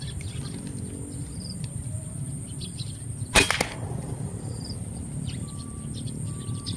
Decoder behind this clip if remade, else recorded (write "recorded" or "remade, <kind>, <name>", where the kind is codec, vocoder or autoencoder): recorded